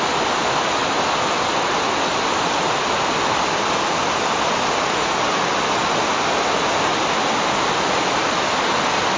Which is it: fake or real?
real